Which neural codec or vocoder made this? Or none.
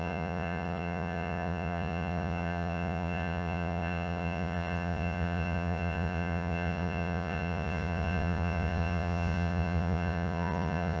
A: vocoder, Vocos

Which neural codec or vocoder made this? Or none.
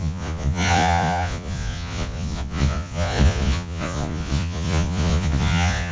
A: vocoder, Vocos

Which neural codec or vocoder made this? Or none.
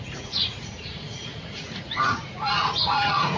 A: vocoder, Vocos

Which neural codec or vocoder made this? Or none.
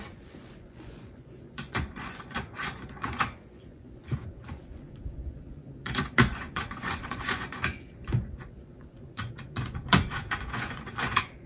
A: vocoder, Vocos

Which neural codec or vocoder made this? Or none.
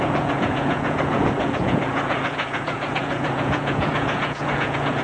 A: vocoder, Vocos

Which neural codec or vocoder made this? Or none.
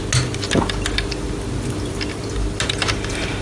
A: none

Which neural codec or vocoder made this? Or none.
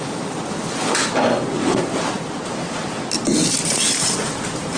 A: none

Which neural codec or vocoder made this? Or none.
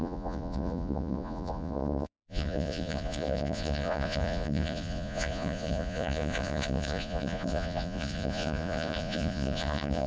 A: vocoder, Vocos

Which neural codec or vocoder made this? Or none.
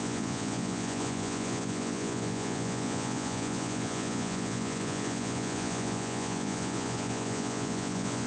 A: vocoder, Vocos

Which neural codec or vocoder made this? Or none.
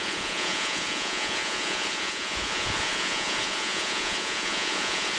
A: vocoder, Vocos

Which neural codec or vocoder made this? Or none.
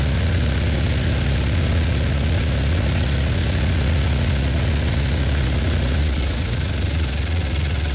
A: vocoder, Vocos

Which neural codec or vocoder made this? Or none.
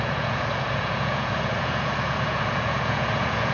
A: vocoder, Vocos